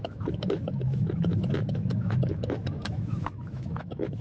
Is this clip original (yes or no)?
no